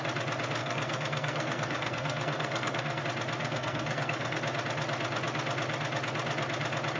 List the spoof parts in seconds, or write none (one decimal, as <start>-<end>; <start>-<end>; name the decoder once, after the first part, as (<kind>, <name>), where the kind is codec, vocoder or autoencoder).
0.6-3.0 (codec, SNAC); 3.4-4.4